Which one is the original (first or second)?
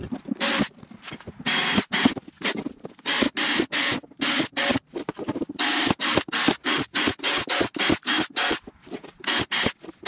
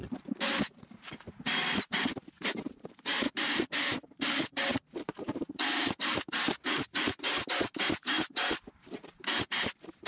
first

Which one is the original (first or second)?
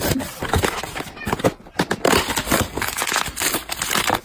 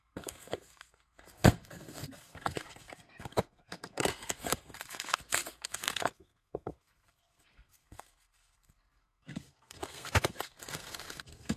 first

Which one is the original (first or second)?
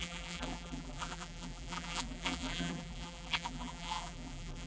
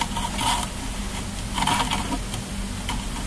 second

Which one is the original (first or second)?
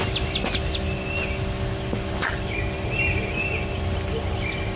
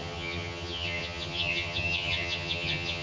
first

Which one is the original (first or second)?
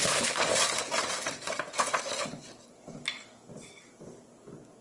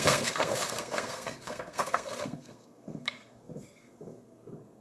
first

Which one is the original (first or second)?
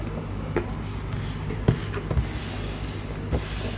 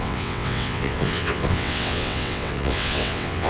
first